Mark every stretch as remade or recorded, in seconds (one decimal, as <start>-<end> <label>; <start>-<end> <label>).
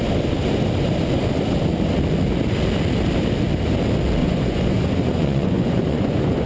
0.0-4.2 recorded; 4.2-6.5 remade